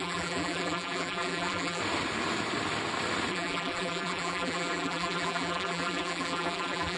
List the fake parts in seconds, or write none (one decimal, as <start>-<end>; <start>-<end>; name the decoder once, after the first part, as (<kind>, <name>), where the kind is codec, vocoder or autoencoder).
0.0-1.8 (vocoder, BigVGAN v2); 3.3-7.0